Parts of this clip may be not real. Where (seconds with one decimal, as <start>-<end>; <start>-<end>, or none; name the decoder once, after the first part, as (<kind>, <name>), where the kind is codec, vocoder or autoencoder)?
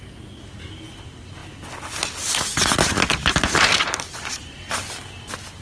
none